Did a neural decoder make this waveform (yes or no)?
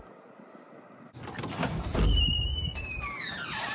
no